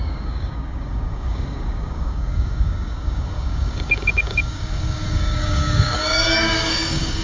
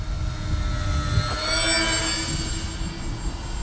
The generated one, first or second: first